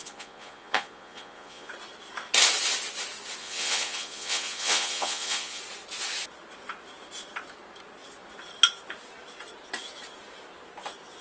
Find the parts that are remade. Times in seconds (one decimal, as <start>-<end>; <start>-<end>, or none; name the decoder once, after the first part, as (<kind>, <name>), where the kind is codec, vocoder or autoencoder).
0.0-1.7 (vocoder, Vocos); 3.4-5.6